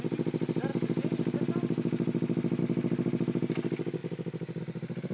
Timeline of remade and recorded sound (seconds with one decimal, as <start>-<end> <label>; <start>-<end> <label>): 0.0-5.1 recorded